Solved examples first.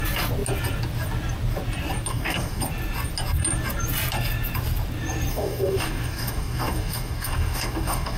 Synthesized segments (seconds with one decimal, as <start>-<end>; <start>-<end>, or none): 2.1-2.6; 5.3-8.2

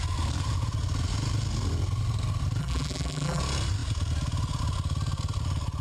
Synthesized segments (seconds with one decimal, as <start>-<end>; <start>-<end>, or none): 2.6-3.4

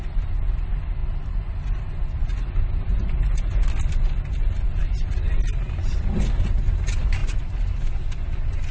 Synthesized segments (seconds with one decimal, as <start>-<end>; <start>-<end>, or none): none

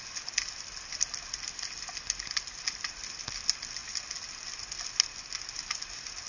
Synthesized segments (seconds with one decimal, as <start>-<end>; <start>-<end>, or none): none